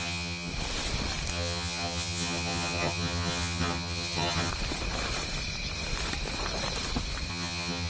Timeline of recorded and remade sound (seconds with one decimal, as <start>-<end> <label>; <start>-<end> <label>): 0.0-0.5 remade; 0.5-1.3 recorded; 1.3-4.5 remade; 4.5-7.3 recorded; 7.3-7.9 remade